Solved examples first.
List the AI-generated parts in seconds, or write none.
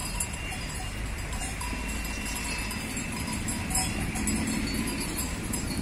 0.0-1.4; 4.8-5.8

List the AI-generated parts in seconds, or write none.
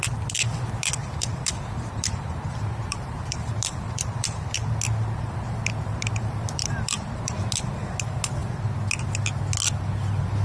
1.0-4.5; 5.2-7.4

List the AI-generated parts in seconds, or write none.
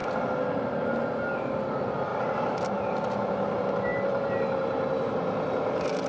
none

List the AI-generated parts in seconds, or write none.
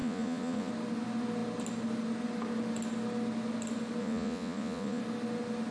0.0-0.7; 4.0-5.0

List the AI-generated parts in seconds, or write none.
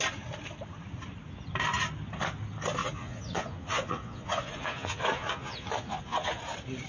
2.8-6.4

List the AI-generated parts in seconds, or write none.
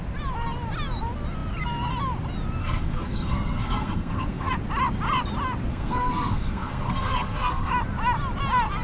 2.6-4.5; 5.7-7.7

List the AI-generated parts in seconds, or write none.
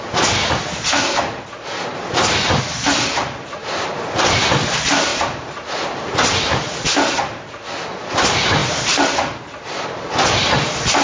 3.6-4.5; 5.1-5.8